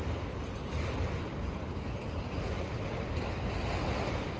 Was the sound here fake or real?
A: real